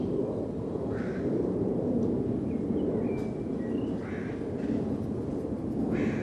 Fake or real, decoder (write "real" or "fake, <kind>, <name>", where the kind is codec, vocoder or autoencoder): real